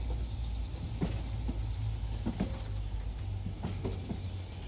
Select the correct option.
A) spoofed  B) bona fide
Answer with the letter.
B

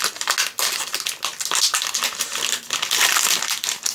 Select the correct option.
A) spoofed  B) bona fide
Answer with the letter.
B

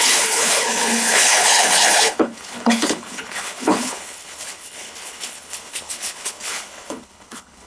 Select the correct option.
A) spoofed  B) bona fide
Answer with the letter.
A